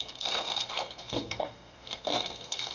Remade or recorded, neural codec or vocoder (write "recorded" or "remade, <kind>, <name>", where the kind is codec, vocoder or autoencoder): remade, codec, SNAC